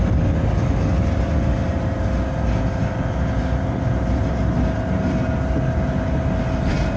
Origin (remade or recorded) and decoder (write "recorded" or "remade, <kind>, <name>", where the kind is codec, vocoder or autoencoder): recorded